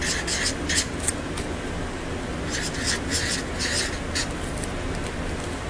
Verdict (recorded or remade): recorded